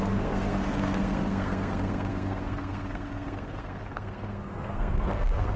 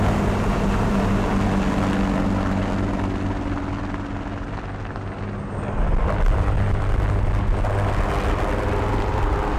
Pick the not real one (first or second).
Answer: first